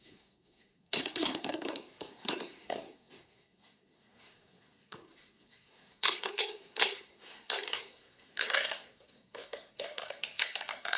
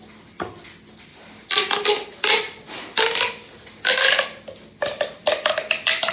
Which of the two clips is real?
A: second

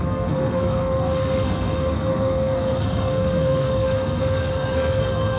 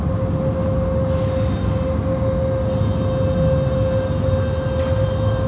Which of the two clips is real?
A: second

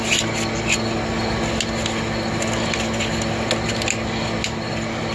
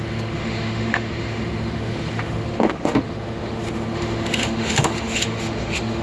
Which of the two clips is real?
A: first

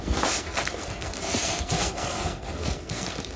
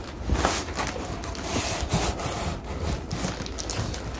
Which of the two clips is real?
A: second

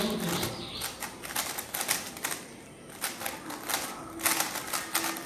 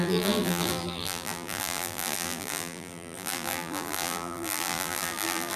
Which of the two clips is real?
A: first